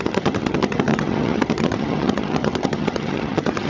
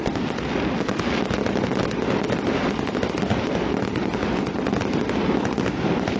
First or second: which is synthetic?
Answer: first